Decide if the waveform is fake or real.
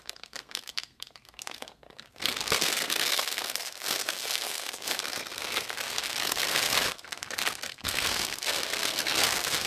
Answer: fake